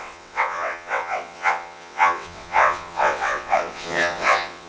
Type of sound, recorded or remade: remade